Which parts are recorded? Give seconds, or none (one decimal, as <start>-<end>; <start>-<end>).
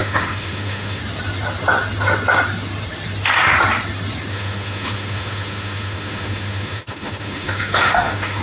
1.0-4.3